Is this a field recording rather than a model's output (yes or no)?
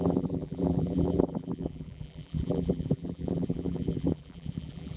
no